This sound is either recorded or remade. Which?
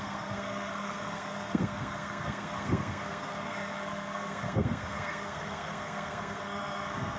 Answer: remade